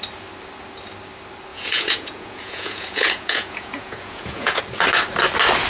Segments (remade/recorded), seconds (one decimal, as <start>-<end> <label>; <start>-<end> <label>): 0.0-1.5 recorded; 1.5-4.6 remade; 4.6-5.7 recorded